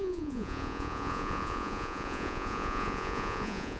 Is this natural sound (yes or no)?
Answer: no